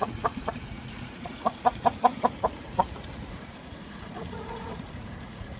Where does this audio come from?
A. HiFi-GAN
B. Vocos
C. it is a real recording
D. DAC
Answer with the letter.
B